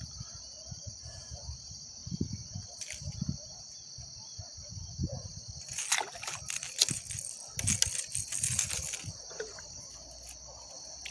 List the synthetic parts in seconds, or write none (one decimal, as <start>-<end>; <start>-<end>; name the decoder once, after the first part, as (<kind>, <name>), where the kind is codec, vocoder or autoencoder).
none